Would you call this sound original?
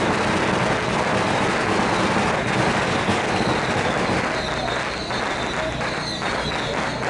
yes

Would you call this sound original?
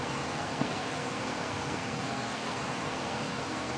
no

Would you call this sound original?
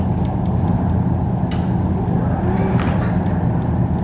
yes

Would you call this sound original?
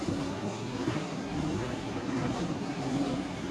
no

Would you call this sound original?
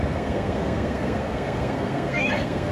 no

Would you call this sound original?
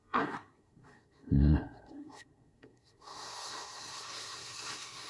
no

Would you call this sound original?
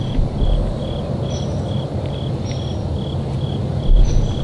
yes